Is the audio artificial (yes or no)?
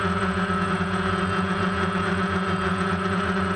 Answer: yes